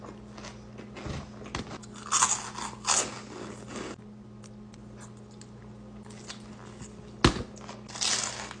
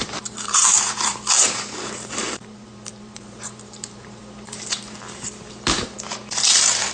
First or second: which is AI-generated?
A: second